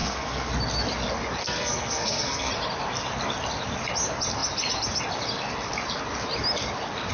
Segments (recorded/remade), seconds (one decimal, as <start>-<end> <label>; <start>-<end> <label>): 0.0-0.5 remade; 0.5-1.4 recorded; 1.4-2.5 remade; 2.5-7.1 recorded